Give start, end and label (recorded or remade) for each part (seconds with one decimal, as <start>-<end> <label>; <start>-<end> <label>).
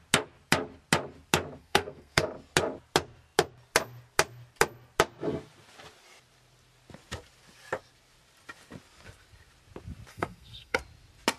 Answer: 0.0-1.6 recorded; 1.6-2.2 remade; 2.2-10.1 recorded; 10.1-10.8 remade; 10.8-11.4 recorded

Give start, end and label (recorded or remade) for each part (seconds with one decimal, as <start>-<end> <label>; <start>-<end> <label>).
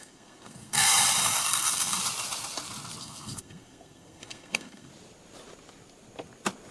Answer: 0.0-0.9 remade; 0.9-1.4 recorded; 1.4-2.0 remade; 2.0-3.0 recorded; 3.0-4.9 remade; 4.9-6.7 recorded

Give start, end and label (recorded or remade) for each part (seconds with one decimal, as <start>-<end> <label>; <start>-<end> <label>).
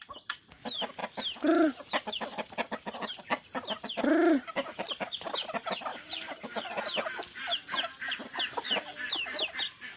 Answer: 0.0-1.0 recorded; 1.0-1.8 remade; 1.8-5.9 recorded; 5.9-6.8 remade; 6.8-7.5 recorded; 7.5-9.2 remade; 9.2-10.0 recorded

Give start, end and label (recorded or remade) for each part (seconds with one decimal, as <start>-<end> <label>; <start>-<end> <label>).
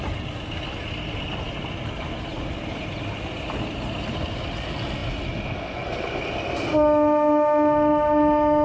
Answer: 0.0-2.3 recorded; 2.3-3.3 remade; 3.3-8.6 recorded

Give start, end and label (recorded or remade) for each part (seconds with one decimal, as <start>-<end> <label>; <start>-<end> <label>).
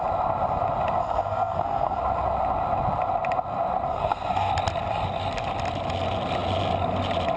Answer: 0.0-1.0 recorded; 1.0-2.0 remade; 2.0-3.9 recorded; 3.9-4.5 remade; 4.5-7.4 recorded